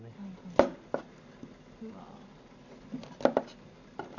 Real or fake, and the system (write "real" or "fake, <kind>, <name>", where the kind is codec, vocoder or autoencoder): real